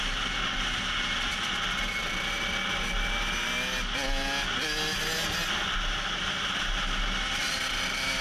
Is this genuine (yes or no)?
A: yes